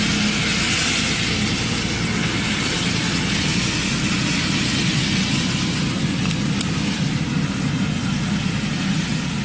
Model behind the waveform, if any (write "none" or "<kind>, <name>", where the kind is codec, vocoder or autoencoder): none